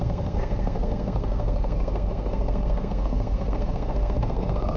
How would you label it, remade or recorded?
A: remade